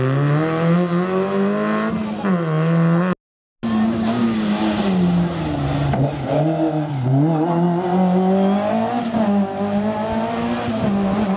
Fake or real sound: real